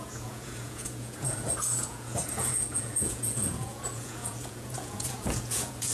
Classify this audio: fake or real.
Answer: fake